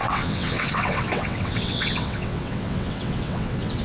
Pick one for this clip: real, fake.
fake